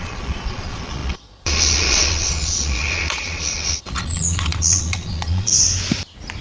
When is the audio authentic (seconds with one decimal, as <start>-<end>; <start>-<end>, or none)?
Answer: 5.5-6.4